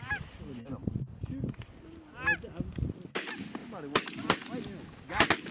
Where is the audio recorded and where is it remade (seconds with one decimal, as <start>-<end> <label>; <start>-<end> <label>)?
0.0-5.5 recorded